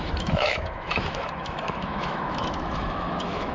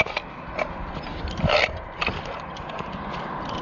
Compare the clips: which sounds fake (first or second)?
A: first